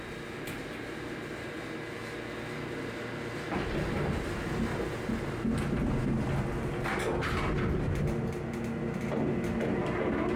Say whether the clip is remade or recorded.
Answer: recorded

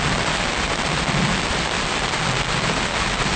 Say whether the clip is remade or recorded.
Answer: recorded